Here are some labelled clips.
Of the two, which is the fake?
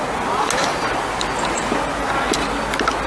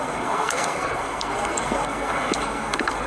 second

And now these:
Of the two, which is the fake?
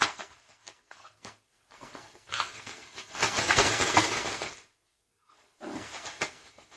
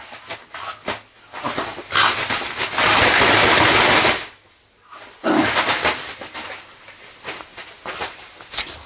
first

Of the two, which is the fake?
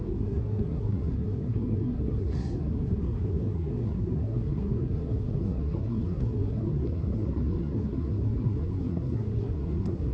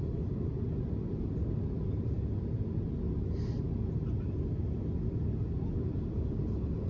first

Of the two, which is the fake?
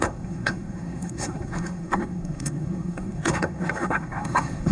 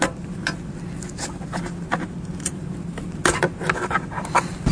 first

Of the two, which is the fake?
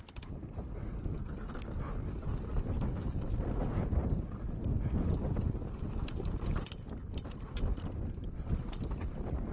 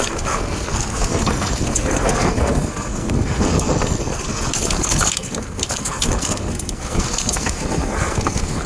second